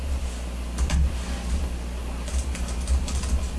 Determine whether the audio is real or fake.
real